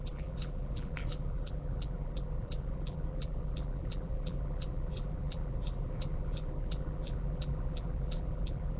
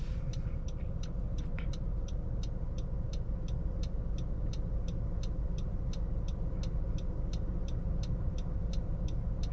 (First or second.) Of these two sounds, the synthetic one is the first